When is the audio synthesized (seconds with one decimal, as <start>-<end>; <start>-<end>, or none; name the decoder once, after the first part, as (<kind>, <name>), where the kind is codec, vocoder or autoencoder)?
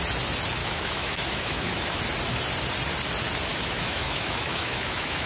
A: 0.6-2.0 (autoencoder, DAC-VAE); 3.5-5.3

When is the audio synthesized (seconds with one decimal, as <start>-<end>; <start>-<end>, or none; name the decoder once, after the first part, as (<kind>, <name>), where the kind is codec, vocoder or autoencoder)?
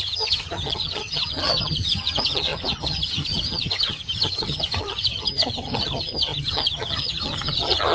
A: 0.0-7.9 (vocoder, HiFi-GAN)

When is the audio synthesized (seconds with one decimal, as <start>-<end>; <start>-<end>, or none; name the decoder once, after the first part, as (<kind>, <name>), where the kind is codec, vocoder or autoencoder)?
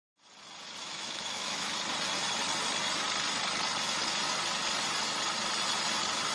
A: 0.8-1.7 (autoencoder, DAC-VAE)